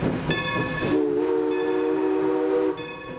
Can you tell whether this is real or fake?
real